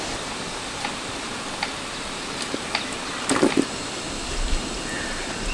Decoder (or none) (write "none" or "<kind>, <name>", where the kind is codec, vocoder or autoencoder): none